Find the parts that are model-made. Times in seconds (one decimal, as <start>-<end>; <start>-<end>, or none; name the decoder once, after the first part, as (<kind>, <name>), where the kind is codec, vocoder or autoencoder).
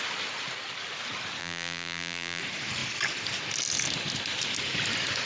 1.4-2.4 (vocoder, BigVGAN v2)